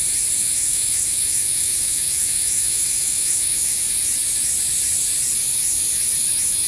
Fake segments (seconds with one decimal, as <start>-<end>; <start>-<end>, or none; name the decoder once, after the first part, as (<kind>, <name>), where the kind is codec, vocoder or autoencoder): 0.4-3.8 (autoencoder, DAC-VAE)